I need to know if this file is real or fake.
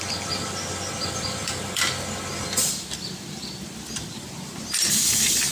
fake